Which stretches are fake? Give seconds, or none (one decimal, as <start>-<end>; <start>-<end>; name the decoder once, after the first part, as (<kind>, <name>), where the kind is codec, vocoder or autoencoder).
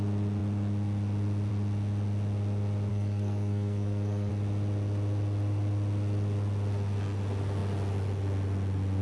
2.9-4.3 (codec, SNAC)